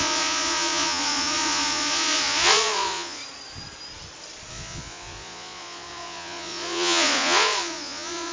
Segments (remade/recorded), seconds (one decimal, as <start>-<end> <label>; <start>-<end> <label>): 0.0-3.2 remade; 3.2-4.5 recorded; 4.5-8.3 remade